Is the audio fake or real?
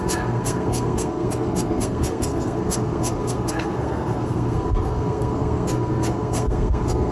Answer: fake